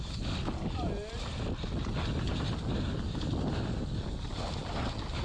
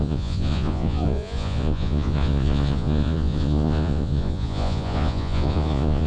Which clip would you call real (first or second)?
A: first